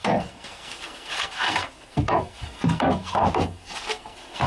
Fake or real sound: fake